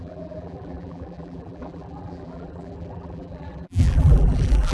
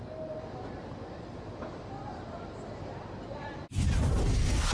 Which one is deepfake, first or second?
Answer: first